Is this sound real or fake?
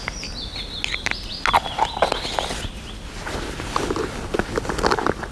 real